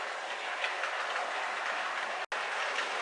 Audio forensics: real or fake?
real